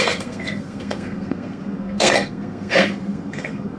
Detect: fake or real fake